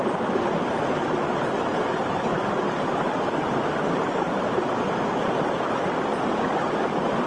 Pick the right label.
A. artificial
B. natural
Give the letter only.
B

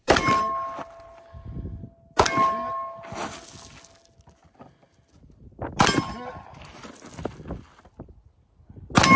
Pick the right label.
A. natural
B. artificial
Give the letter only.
A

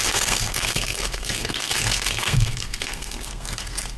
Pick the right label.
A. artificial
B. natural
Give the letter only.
A